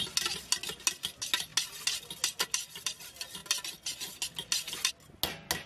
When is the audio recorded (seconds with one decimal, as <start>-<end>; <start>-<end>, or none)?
0.0-5.7